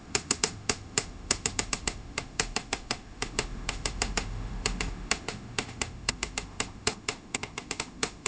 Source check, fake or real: fake